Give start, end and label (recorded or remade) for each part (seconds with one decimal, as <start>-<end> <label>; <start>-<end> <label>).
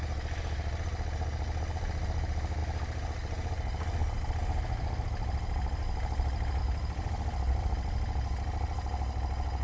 0.0-9.6 recorded